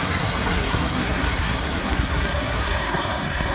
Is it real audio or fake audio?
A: fake